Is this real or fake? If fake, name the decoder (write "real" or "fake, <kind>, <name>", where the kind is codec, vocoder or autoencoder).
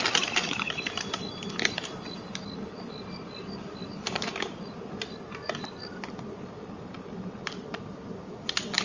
real